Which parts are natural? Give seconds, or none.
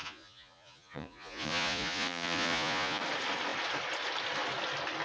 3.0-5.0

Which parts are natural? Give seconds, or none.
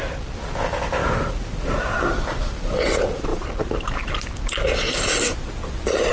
0.0-6.1